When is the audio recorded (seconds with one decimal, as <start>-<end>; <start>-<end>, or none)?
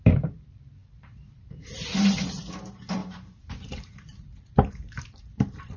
none